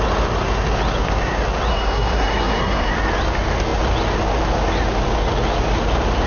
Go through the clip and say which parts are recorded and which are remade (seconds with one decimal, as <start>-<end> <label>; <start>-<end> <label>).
0.0-1.7 recorded; 1.7-2.9 remade; 2.9-6.3 recorded